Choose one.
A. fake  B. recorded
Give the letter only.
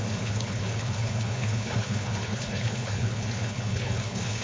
A